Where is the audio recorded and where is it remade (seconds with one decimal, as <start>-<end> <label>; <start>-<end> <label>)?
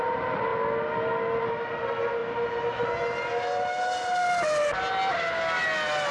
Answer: 0.0-6.1 recorded